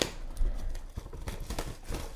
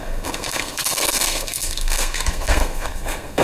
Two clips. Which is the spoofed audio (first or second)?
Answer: second